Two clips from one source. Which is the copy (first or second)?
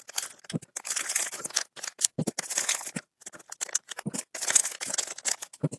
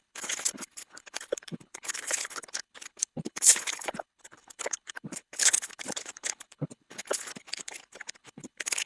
second